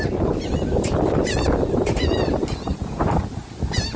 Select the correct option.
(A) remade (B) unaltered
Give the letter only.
B